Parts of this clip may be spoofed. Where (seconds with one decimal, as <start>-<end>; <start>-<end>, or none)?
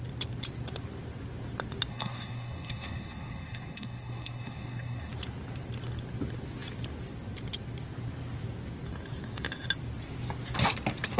1.9-5.1